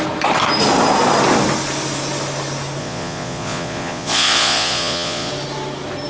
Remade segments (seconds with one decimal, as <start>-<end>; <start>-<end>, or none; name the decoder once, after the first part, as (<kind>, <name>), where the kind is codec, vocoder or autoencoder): 2.8-5.3 (vocoder, Vocos)